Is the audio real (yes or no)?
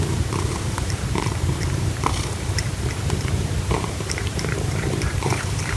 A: no